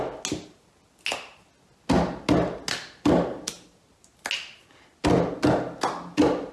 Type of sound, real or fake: real